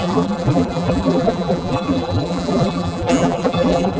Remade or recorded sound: remade